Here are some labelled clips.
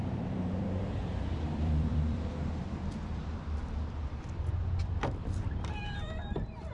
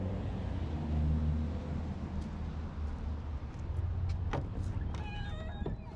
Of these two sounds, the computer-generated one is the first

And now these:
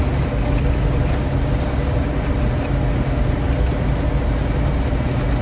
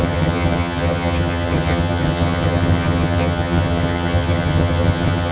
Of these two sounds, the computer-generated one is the second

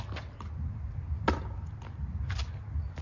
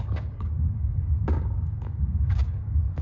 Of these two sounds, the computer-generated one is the second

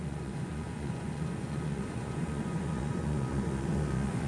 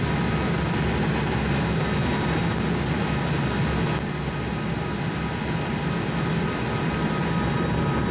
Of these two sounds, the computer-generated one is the first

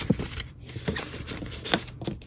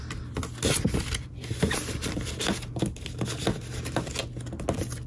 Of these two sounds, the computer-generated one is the first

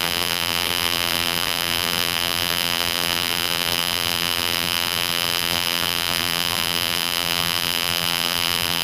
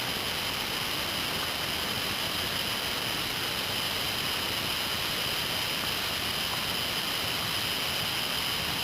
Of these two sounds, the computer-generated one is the first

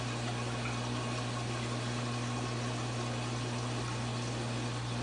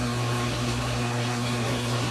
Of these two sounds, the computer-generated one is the second